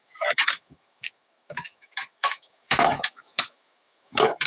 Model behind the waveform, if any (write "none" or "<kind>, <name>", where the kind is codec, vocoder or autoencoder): autoencoder, DAC-VAE